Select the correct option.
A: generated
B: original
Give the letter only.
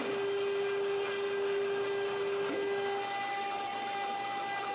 B